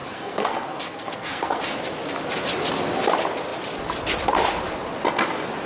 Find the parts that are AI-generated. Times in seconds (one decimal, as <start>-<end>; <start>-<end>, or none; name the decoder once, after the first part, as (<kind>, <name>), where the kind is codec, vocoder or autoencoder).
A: 0.0-1.6 (codec, SNAC)